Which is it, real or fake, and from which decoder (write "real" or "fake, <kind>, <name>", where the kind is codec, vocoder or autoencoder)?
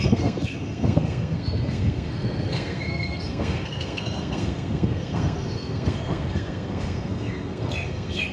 fake, codec, SNAC